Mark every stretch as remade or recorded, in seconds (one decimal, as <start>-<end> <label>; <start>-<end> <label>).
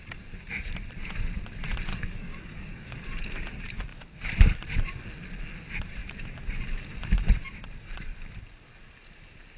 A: 0.0-1.9 recorded; 1.9-3.0 remade; 3.0-9.6 recorded